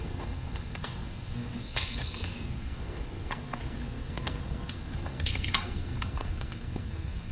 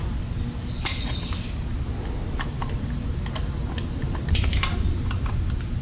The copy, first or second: first